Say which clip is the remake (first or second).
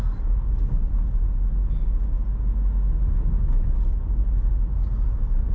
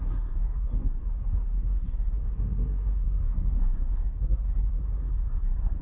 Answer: second